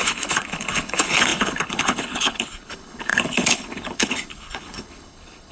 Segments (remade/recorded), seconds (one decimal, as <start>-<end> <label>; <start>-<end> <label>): 0.0-5.5 remade